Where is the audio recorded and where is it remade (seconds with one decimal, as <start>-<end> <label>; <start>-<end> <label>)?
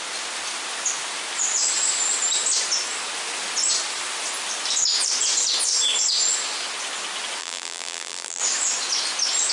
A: 0.0-7.4 recorded; 7.4-8.4 remade; 8.4-9.5 recorded